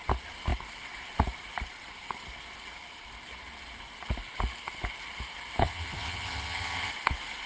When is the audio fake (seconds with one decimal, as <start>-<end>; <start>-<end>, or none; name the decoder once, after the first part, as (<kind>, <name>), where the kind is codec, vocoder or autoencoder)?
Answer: 5.6-6.9 (vocoder, HiFi-GAN)